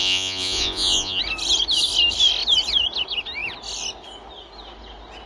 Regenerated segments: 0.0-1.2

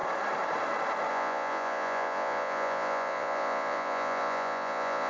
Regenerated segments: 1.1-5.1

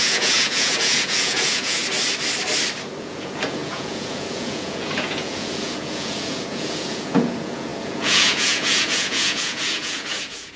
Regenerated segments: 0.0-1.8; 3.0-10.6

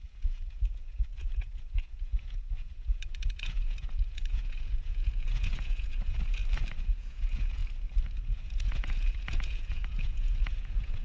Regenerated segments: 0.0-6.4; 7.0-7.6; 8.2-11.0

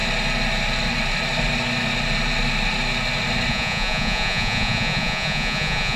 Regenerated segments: 3.5-6.0

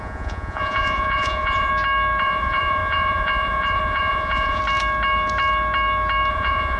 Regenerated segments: 0.0-1.7; 2.2-4.6; 6.3-6.8